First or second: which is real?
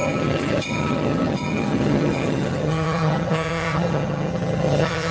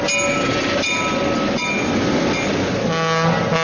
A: second